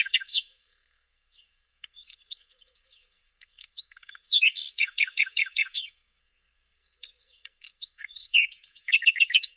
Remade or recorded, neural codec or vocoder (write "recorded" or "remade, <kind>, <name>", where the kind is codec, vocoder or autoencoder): remade, codec, SNAC